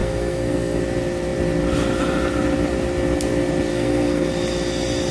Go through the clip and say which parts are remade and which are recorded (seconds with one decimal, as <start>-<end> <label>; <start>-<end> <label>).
0.0-0.8 remade; 0.8-3.7 recorded; 3.7-4.3 remade; 4.3-5.1 recorded